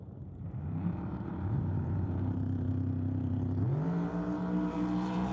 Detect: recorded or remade remade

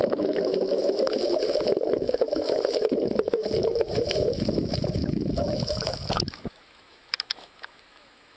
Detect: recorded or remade remade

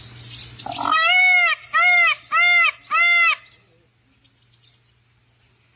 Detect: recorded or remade recorded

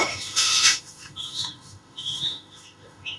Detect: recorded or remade remade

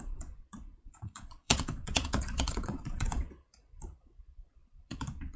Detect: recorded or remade remade